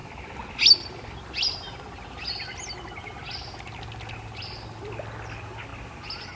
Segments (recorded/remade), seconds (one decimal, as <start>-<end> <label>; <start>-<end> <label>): 0.0-6.4 recorded